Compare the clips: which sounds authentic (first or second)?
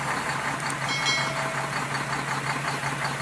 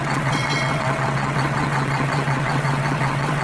first